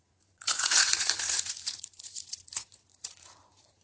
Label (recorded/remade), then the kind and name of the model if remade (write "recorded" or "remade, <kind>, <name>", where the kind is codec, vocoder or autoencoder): remade, vocoder, Vocos